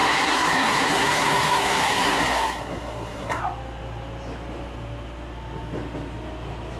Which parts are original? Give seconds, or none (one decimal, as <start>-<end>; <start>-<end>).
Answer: 3.4-6.8